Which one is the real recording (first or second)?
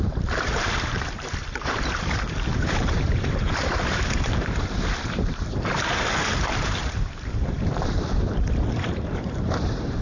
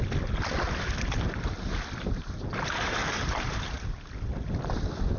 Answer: second